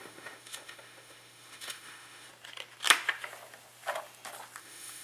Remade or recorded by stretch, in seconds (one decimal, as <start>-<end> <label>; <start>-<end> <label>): 0.0-2.3 remade; 2.3-4.6 recorded; 4.6-5.0 remade